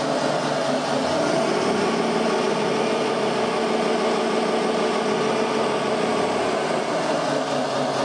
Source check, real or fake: real